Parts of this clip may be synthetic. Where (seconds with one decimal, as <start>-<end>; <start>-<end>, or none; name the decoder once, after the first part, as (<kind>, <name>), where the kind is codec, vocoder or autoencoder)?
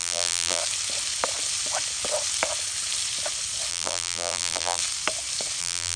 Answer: 0.0-0.6 (vocoder, BigVGAN v2); 3.7-4.8; 5.6-6.0